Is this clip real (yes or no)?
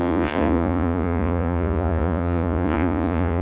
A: no